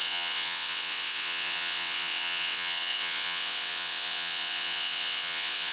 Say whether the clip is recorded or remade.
remade